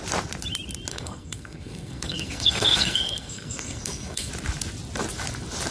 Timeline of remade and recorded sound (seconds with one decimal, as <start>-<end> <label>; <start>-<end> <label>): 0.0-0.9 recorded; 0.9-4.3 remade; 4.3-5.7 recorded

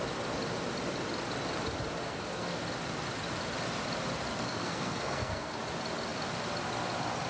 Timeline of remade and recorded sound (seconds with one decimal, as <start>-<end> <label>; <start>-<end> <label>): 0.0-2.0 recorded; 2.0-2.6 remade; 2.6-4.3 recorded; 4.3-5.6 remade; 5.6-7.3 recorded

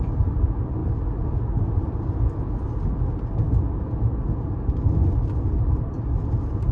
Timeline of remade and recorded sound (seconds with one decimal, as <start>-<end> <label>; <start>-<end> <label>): 0.0-6.7 recorded

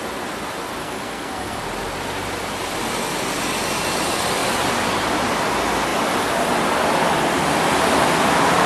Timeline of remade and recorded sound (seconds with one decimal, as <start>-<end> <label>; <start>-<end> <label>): 0.0-0.8 recorded; 0.8-1.6 remade; 1.6-8.7 recorded